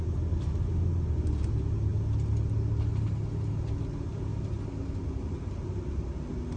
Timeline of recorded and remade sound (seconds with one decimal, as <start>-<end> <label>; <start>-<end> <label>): 0.0-6.6 recorded